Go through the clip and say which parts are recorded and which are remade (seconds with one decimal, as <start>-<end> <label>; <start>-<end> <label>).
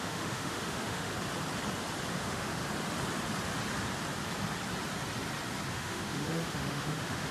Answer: 0.0-1.1 remade; 1.1-2.1 recorded; 2.1-2.6 remade; 2.6-5.7 recorded; 5.7-7.3 remade